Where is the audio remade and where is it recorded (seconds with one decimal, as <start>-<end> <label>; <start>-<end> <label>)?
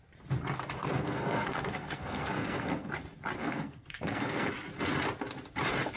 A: 0.0-0.8 recorded; 0.8-2.9 remade; 2.9-3.4 recorded; 3.4-4.5 remade; 4.5-6.0 recorded